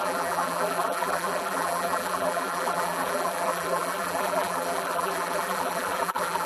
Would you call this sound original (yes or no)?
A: no